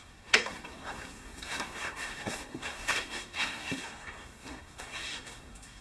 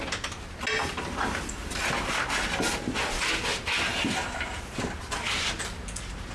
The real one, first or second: second